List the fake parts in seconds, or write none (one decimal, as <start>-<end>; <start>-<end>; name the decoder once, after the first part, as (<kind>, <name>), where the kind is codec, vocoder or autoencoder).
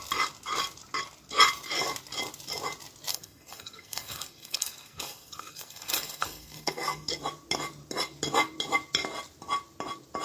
3.1-7.2 (codec, SNAC)